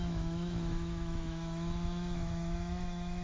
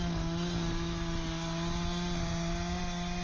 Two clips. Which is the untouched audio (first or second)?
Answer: second